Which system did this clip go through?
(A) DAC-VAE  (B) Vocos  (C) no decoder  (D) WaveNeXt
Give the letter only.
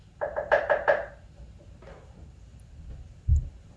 C